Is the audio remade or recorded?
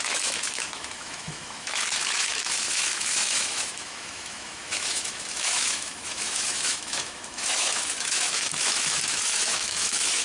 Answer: remade